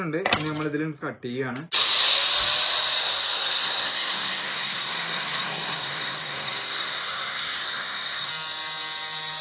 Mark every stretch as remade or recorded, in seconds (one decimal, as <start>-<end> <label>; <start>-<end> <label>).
0.0-3.0 recorded; 3.0-8.3 remade; 8.3-9.4 recorded